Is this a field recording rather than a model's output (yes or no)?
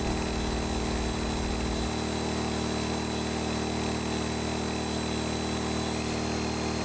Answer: yes